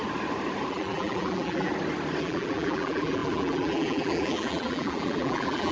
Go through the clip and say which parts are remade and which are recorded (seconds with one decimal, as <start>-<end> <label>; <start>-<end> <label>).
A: 0.0-0.7 recorded; 0.7-1.7 remade; 1.7-2.2 recorded; 2.2-5.7 remade